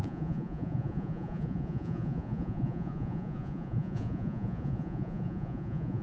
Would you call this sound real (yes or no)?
no